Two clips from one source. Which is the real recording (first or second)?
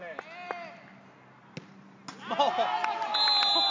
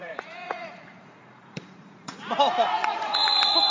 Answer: first